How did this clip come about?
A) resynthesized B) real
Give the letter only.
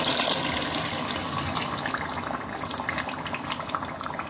B